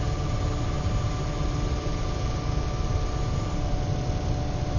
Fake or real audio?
real